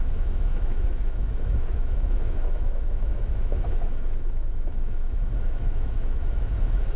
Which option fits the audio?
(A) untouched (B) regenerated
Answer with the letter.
B